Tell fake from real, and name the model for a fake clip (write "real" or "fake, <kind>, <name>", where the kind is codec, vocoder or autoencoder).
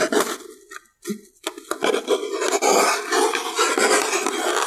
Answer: real